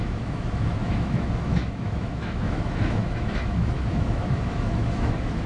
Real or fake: fake